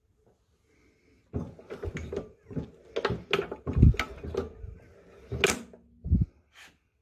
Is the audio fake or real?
real